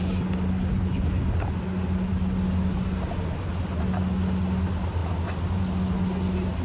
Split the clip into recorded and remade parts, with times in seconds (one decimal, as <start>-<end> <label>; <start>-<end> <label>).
0.0-6.6 recorded

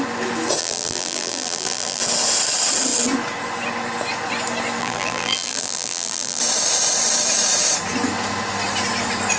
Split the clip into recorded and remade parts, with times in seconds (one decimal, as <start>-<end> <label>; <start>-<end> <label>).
0.0-0.6 recorded; 0.6-2.0 remade; 2.0-4.8 recorded; 4.8-6.4 remade; 6.4-9.4 recorded

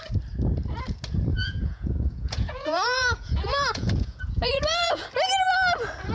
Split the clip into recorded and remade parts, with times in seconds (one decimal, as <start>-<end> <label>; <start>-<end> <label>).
0.0-1.3 recorded; 1.3-5.0 remade; 5.0-6.1 recorded

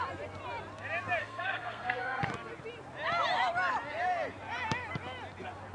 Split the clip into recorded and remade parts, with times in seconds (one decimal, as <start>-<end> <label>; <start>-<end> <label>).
0.0-1.2 recorded; 1.2-2.2 remade; 2.2-5.7 recorded

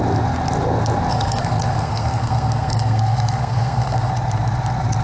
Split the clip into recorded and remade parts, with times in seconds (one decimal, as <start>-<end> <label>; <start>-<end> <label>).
0.0-1.1 recorded; 1.1-4.1 remade; 4.1-5.0 recorded

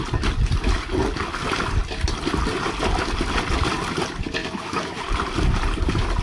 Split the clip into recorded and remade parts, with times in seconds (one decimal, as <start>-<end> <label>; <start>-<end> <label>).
0.0-4.4 recorded; 4.4-5.0 remade; 5.0-6.2 recorded

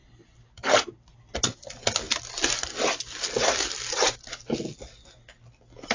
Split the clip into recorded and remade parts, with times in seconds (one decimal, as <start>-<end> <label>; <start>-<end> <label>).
0.0-3.0 remade; 3.0-5.9 recorded

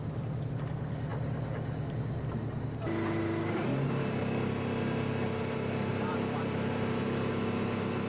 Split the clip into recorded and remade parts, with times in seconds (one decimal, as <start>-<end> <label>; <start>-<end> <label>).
0.0-0.5 remade; 0.5-3.7 recorded; 3.7-4.2 remade; 4.2-5.9 recorded; 5.9-7.0 remade; 7.0-8.1 recorded